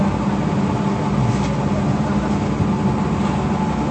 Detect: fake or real real